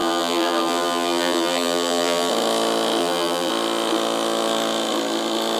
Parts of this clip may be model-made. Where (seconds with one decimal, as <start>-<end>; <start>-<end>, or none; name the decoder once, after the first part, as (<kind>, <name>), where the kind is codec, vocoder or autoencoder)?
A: 0.0-2.3 (vocoder, BigVGAN v2); 3.0-3.5